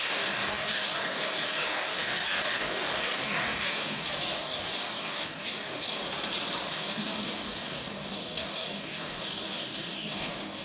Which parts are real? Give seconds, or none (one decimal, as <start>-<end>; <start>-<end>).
6.0-6.7